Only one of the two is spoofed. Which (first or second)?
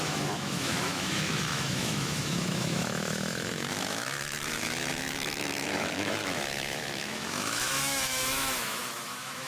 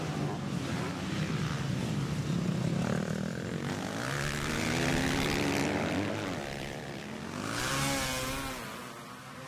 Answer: first